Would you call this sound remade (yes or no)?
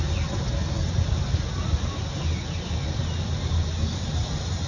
no